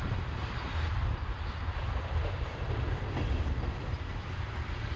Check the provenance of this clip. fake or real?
fake